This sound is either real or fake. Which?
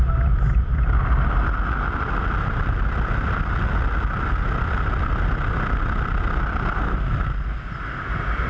real